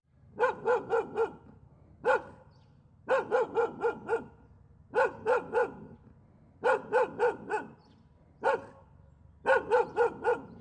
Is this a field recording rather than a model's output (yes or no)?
yes